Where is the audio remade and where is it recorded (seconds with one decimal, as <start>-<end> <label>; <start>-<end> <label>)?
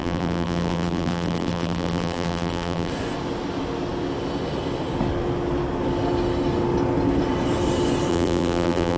0.0-2.9 remade; 2.9-8.1 recorded; 8.1-9.0 remade